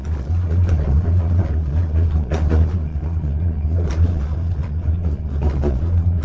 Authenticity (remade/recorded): remade